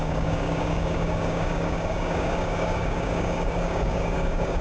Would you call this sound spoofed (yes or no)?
yes